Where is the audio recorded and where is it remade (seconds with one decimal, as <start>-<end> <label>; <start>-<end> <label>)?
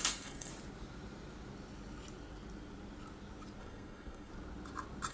0.0-0.5 remade; 0.5-3.6 recorded; 3.6-4.3 remade; 4.3-5.1 recorded